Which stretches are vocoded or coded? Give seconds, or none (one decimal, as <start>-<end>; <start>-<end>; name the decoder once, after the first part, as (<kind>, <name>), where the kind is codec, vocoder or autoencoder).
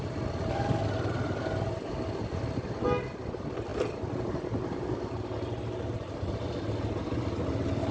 3.7-4.2 (vocoder, BigVGAN v2)